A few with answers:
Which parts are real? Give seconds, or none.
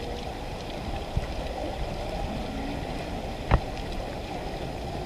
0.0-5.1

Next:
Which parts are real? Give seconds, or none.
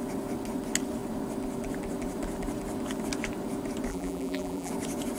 0.0-3.9; 4.7-5.2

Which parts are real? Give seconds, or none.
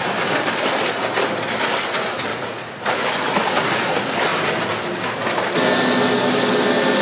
0.0-2.3; 2.9-7.0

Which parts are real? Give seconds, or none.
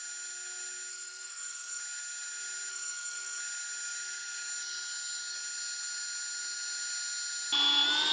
0.0-0.9; 1.8-2.7; 3.4-8.1